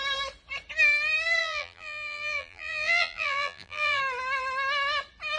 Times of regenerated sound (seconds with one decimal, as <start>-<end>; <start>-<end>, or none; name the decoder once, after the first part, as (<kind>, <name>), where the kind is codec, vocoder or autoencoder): 1.4-4.0 (vocoder, BigVGAN v2)